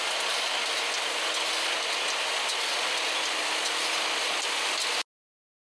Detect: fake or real real